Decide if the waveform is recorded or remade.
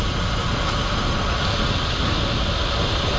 recorded